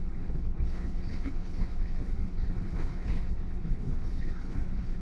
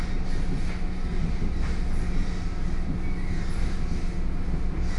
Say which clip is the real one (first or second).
second